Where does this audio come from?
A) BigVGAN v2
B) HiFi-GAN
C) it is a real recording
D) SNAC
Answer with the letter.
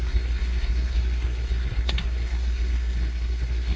D